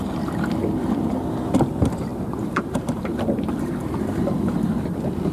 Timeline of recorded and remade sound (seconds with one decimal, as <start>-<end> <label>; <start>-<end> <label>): 0.0-2.1 recorded; 2.1-3.0 remade; 3.0-5.3 recorded